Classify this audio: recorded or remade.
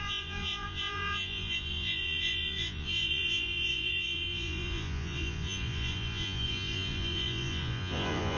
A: remade